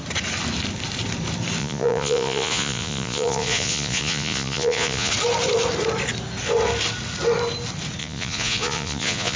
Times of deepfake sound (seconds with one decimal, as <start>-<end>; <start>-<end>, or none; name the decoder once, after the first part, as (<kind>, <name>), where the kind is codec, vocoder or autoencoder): 1.6-5.1 (vocoder, Vocos); 8.0-9.4